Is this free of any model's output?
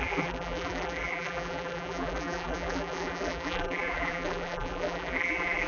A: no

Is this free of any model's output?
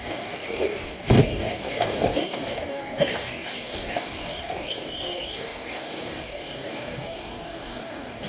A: no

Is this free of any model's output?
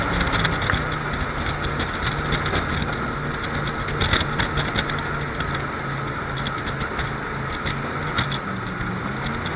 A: yes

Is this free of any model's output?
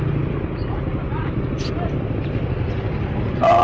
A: yes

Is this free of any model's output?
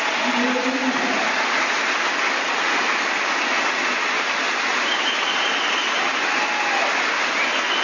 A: yes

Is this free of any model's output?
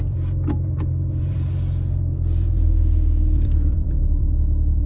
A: no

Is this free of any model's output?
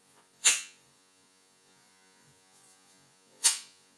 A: no